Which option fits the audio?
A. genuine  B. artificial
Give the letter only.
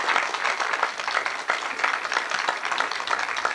A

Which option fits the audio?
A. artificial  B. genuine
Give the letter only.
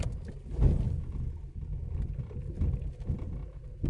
B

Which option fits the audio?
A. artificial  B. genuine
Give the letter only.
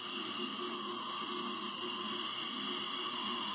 B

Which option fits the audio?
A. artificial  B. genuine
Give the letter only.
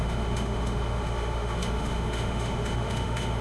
A